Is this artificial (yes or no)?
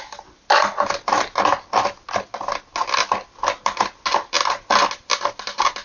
no